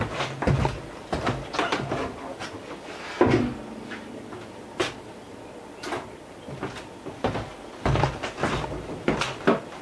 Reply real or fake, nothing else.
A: real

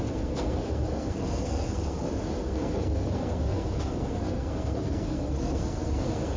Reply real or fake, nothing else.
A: fake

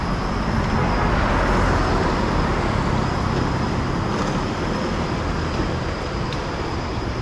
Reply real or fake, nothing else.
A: real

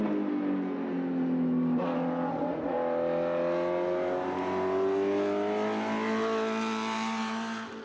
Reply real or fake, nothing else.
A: real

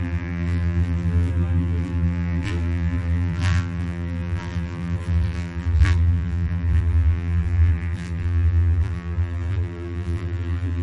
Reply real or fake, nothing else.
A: fake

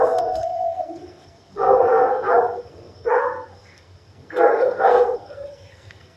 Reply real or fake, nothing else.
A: fake